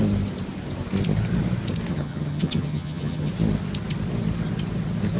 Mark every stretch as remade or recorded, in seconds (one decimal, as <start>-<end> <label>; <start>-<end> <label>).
0.0-1.9 recorded; 1.9-3.3 remade; 3.3-5.2 recorded